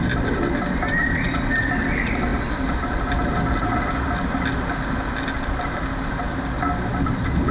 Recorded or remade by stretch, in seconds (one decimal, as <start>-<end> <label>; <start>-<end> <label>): 0.0-7.5 recorded